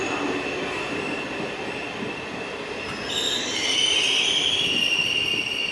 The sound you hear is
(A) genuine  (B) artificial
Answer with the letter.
A